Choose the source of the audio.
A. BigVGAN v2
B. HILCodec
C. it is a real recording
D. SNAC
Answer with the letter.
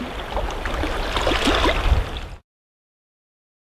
C